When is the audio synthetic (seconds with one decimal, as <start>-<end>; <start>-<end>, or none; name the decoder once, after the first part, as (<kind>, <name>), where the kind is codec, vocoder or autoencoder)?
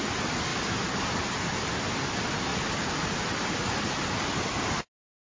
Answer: none